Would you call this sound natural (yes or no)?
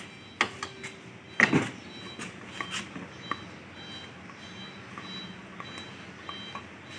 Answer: yes